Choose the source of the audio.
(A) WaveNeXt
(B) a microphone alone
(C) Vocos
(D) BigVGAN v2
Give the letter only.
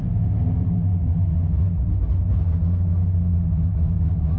B